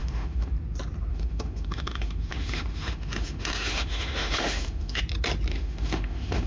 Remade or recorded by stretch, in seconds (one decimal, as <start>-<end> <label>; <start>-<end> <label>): 0.0-0.5 remade; 0.5-1.1 recorded; 1.1-5.0 remade; 5.0-5.5 recorded; 5.5-6.5 remade